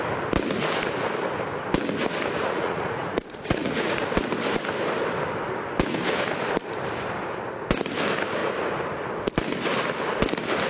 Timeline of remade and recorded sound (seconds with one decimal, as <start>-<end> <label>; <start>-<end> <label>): 0.0-2.4 recorded; 2.4-4.0 remade; 4.0-10.7 recorded